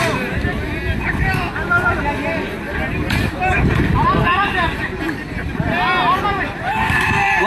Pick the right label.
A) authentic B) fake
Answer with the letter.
A